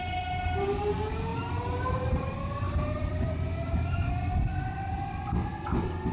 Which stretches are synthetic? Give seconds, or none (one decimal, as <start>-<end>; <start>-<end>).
1.3-4.1; 4.5-5.3